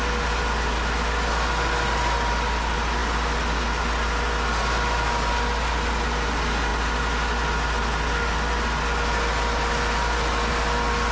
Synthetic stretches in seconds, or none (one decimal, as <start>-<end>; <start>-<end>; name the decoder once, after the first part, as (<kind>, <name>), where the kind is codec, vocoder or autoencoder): none